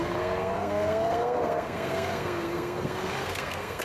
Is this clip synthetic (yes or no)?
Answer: yes